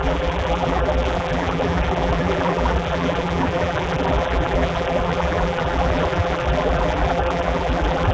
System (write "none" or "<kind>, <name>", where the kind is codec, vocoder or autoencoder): vocoder, BigVGAN v2